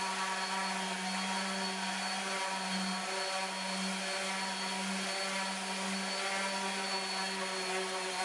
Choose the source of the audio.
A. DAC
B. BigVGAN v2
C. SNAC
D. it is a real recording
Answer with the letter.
D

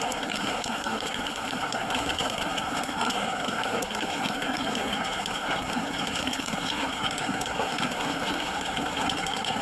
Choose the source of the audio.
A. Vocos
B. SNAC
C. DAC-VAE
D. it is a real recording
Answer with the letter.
B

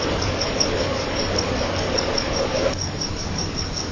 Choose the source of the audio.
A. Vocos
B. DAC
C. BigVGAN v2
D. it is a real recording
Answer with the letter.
B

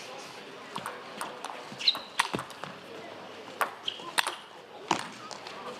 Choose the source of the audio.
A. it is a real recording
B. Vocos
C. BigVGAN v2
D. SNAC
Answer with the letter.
A